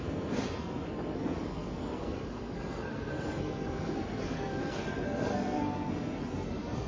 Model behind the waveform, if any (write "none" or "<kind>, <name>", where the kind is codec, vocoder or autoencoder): codec, SNAC